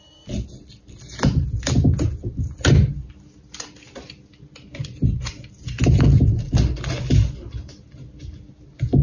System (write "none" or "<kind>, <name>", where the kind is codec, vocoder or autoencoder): none